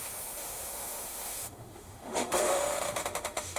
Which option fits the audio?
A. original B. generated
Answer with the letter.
B